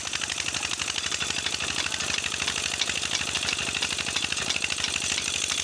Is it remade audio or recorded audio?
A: recorded